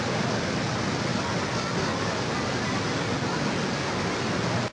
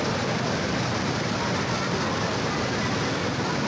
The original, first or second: first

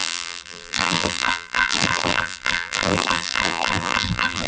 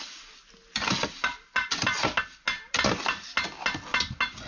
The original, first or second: second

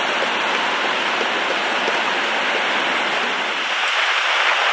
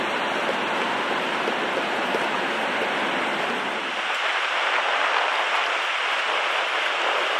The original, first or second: second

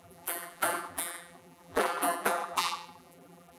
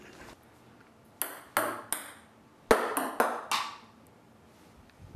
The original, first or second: second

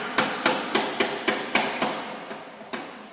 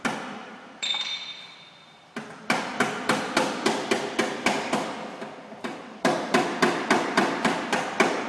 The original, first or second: first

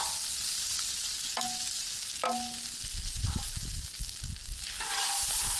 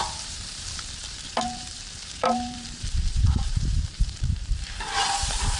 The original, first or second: first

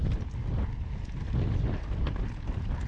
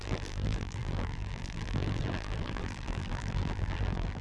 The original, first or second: first